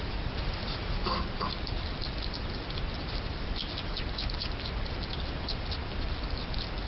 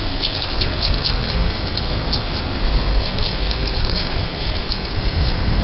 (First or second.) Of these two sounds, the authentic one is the first